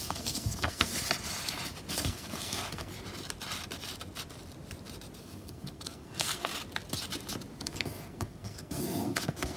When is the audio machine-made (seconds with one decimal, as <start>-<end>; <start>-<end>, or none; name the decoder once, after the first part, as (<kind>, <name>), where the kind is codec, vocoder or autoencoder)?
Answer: 0.0-0.9 (codec, SNAC); 1.9-2.9; 5.2-6.5; 7.6-9.6